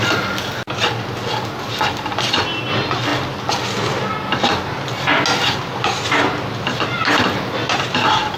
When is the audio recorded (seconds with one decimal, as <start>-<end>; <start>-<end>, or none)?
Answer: 0.0-8.4